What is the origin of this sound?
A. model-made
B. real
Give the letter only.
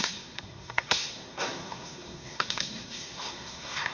A